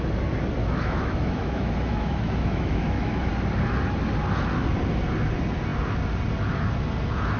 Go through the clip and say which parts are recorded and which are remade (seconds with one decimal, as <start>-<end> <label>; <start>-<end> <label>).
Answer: 0.0-0.6 recorded; 0.6-3.3 remade; 3.3-7.4 recorded